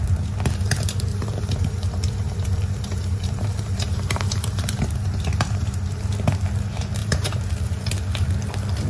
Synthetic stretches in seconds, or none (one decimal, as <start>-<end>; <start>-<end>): 1.1-6.0; 7.0-7.9